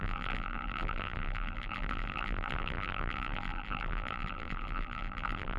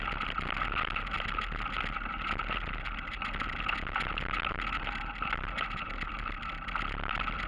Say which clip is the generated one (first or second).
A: first